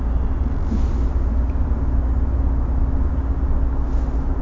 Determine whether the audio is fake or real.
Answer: real